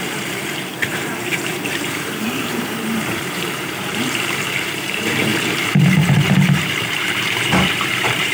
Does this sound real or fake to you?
fake